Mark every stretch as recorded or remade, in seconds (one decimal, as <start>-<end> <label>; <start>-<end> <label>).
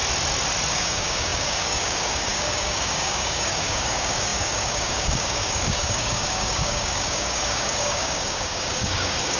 0.0-0.7 recorded; 0.7-9.4 remade